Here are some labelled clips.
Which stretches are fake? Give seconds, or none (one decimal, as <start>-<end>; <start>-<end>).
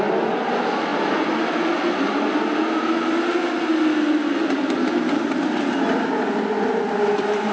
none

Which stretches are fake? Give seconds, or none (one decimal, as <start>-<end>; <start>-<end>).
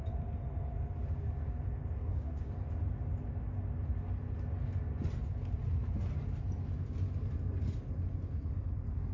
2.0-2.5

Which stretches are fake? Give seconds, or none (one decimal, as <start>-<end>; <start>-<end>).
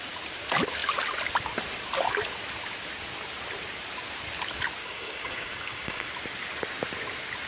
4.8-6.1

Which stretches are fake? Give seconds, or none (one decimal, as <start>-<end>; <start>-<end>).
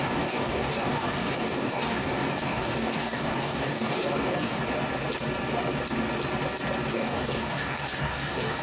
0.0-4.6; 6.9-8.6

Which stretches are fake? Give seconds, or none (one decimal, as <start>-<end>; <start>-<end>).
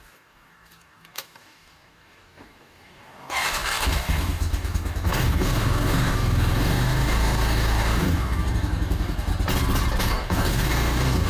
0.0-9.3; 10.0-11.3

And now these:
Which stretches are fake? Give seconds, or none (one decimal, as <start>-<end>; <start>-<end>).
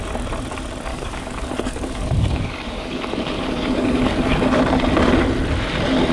0.9-4.6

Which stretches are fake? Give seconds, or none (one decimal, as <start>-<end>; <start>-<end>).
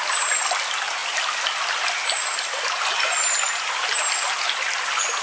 none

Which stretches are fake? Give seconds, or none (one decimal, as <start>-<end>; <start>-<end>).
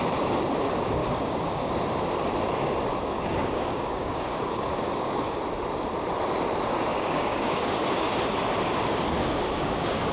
1.0-1.7; 2.9-5.4; 6.9-8.2; 9.2-10.1